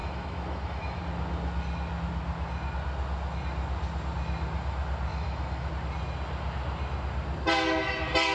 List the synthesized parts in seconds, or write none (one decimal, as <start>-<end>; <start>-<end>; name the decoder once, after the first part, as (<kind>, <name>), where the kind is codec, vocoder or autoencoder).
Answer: 0.0-1.0 (autoencoder, DAC-VAE); 5.1-5.7